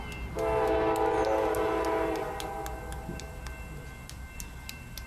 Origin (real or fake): real